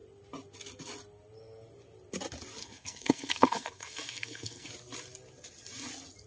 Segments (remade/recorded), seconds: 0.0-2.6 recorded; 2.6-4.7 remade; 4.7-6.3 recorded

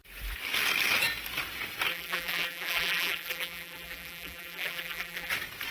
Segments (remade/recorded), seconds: 0.0-1.9 recorded; 1.9-5.3 remade; 5.3-5.7 recorded

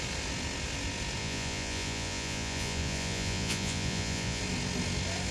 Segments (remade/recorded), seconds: 0.0-1.2 recorded; 1.2-4.4 remade; 4.4-5.3 recorded

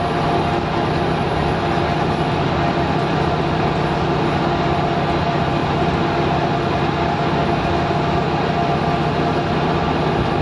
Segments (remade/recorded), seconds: 0.0-10.4 recorded

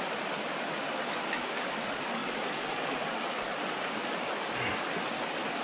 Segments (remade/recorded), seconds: 0.0-5.6 recorded